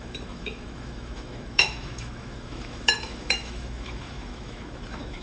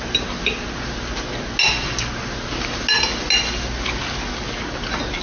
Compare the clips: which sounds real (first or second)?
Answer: second